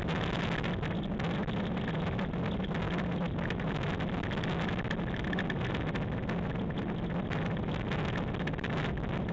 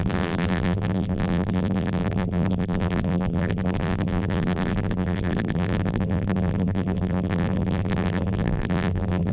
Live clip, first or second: first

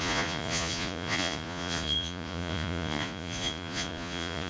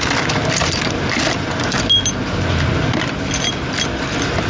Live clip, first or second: second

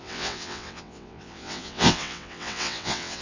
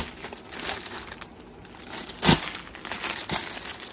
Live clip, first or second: second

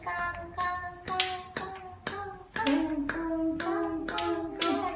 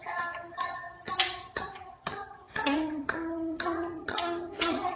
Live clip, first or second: first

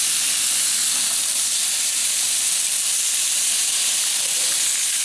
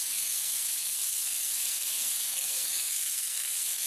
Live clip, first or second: first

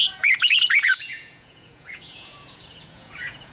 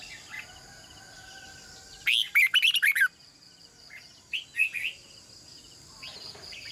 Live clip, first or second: second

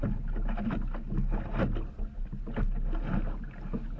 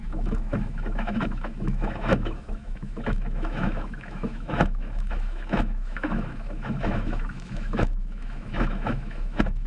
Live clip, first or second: first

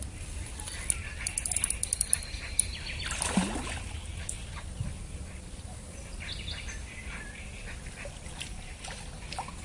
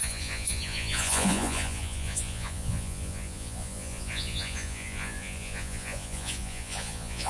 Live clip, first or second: first